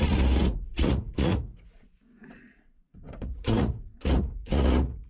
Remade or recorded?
remade